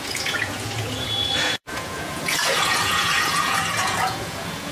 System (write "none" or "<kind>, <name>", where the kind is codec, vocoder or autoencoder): vocoder, Vocos